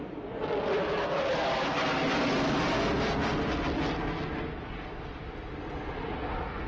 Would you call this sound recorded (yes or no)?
yes